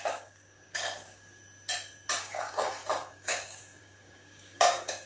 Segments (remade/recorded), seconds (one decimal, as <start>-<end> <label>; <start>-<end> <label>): 0.0-1.4 remade; 1.4-2.2 recorded; 2.2-5.1 remade